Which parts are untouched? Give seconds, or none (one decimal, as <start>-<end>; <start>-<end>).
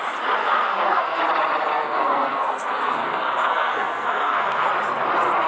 0.0-0.4; 1.2-1.7; 4.7-5.5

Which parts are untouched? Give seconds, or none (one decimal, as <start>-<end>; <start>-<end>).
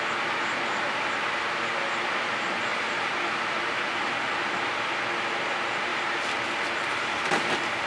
0.0-2.7; 3.9-5.9; 6.4-7.9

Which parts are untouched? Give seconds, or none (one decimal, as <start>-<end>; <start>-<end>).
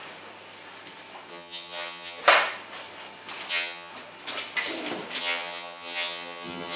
0.0-1.3; 2.2-3.5; 3.9-5.2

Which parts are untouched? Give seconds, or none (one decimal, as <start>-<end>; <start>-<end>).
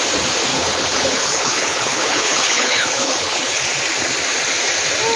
0.0-0.5; 3.6-5.2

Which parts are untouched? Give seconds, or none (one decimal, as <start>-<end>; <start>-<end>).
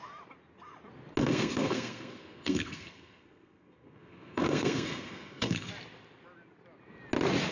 0.0-1.2; 5.7-7.5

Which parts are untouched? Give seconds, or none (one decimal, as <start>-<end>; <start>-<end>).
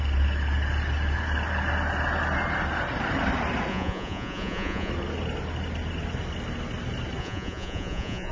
0.0-3.7; 4.9-7.2